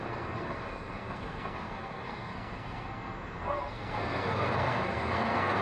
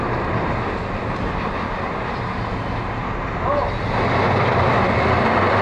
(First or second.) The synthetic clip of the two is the first